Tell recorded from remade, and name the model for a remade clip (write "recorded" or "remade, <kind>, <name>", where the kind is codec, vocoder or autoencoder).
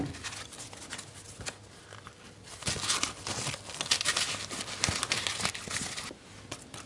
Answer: recorded